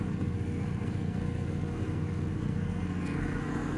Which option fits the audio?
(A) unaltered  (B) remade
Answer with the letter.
B